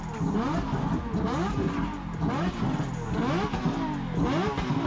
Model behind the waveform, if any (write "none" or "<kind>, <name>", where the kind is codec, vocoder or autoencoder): none